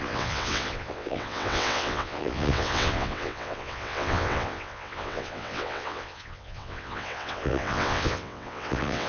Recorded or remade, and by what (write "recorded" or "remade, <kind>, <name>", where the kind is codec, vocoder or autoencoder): remade, vocoder, WaveNeXt